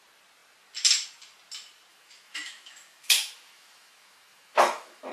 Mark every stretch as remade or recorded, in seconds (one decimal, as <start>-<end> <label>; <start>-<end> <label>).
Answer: 0.0-1.9 recorded; 1.9-5.1 remade